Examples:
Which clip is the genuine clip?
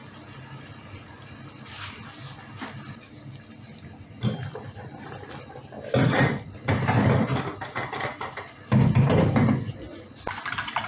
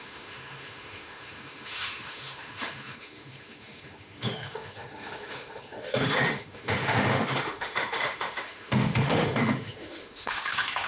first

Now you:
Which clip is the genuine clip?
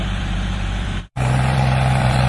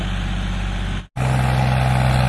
second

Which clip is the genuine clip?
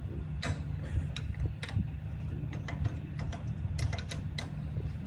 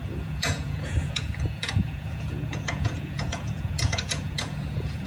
first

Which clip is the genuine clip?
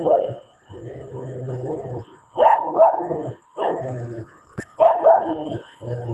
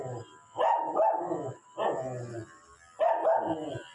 second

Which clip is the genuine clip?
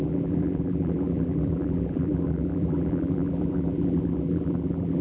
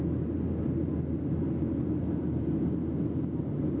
second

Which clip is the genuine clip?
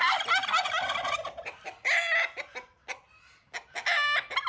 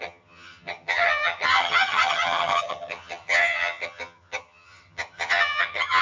first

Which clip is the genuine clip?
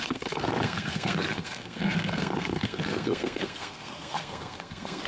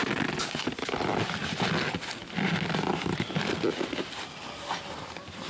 second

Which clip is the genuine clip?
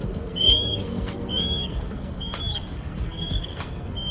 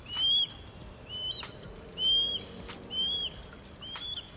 second